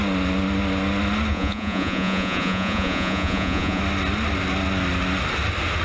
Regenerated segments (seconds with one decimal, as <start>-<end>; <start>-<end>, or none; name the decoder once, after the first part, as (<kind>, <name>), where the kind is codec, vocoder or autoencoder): 1.3-3.8 (vocoder, Vocos)